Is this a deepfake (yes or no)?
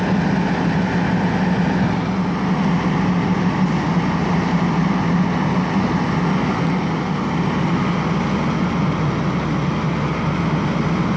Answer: no